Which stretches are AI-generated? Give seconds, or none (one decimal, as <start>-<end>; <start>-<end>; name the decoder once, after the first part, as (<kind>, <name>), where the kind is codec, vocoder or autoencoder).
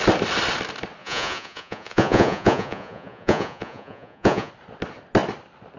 1.0-4.5 (vocoder, Vocos)